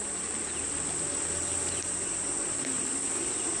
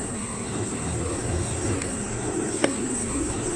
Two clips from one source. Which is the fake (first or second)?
second